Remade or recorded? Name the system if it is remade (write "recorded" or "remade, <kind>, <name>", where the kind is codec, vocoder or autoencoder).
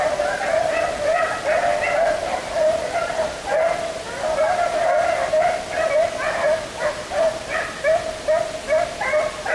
recorded